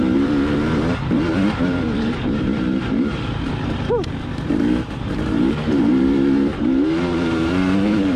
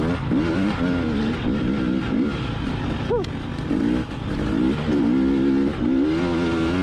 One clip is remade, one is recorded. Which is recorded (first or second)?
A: second